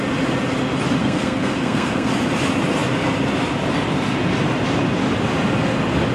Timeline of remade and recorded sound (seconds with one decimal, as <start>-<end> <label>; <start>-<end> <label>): 0.0-1.0 recorded; 1.0-2.1 remade; 2.1-6.1 recorded